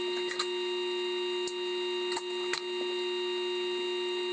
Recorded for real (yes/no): yes